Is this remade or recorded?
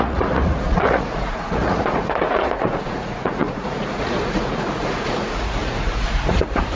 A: remade